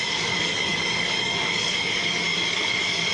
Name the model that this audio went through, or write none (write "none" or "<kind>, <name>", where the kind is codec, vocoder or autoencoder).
codec, DAC